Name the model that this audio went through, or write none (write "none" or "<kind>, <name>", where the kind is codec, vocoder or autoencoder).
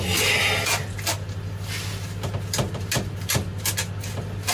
none